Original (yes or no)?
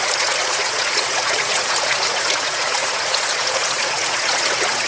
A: no